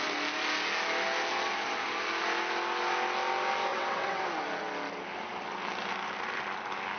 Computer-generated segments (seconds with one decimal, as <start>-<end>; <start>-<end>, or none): 3.7-4.2